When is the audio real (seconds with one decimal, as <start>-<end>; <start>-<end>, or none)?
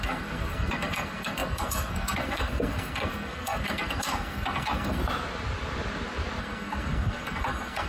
5.0-6.4